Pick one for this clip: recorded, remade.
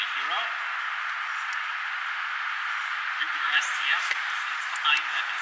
recorded